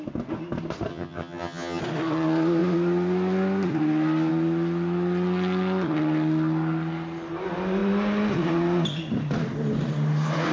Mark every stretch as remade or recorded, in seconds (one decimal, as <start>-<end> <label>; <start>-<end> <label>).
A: 0.0-0.9 recorded; 0.9-1.8 remade; 1.8-10.5 recorded